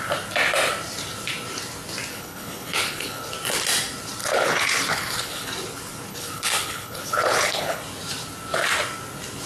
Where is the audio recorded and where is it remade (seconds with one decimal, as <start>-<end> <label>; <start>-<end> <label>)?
0.0-2.1 recorded; 2.1-3.3 remade; 3.3-4.2 recorded; 4.2-5.5 remade; 5.5-6.1 recorded; 6.1-7.8 remade; 7.8-9.5 recorded